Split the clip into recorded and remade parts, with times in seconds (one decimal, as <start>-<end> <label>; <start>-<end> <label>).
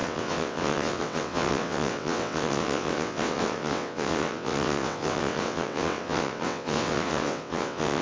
0.0-8.0 remade